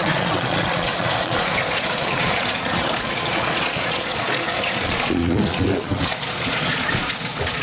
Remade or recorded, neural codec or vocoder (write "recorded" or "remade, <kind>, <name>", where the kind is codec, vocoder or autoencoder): remade, vocoder, Vocos